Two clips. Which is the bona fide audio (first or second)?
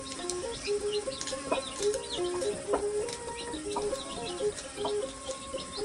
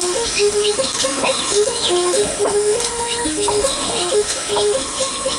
first